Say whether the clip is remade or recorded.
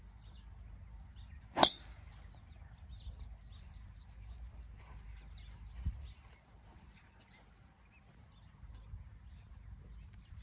recorded